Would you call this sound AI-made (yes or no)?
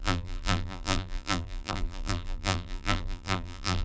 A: yes